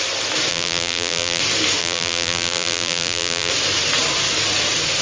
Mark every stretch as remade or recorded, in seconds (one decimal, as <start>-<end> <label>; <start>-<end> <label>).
0.0-0.5 recorded; 0.5-1.4 remade; 1.4-1.8 recorded; 1.8-3.5 remade; 3.5-5.0 recorded